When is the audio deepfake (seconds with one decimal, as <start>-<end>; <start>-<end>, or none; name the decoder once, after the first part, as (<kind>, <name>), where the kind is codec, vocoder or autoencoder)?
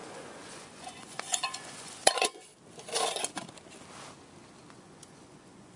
0.0-2.5 (vocoder, Vocos); 4.7-5.8